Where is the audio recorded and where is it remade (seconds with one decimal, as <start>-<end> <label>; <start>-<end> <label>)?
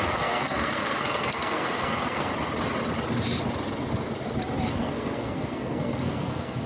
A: 0.0-2.3 remade; 2.3-4.7 recorded; 4.7-6.7 remade